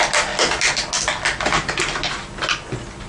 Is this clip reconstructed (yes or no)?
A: no